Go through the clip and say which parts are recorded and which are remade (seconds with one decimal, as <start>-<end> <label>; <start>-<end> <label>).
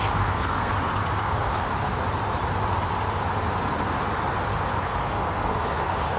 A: 0.0-0.7 remade; 0.7-1.2 recorded; 1.2-1.9 remade; 1.9-4.8 recorded; 4.8-6.2 remade